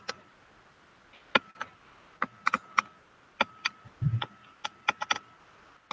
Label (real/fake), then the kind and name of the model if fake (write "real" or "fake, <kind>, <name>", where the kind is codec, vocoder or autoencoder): real